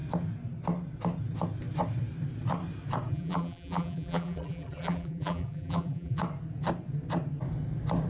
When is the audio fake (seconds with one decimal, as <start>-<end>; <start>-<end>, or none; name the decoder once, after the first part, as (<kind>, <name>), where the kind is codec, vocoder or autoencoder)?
3.1-6.2 (vocoder, BigVGAN v2)